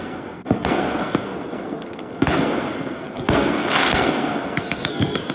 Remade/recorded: remade